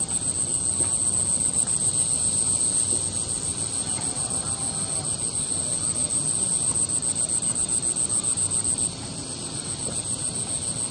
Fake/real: real